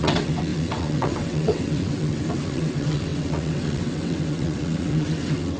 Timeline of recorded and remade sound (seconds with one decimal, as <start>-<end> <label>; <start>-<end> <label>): 0.0-5.6 remade